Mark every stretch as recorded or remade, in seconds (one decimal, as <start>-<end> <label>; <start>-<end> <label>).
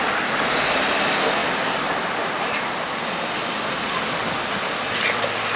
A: 0.0-5.6 recorded